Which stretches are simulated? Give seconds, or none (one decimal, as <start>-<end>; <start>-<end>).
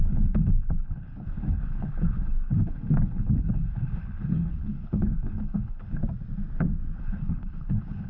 0.0-6.0; 7.0-8.1